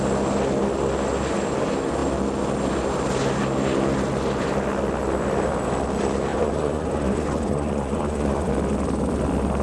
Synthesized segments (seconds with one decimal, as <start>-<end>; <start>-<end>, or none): 6.3-8.5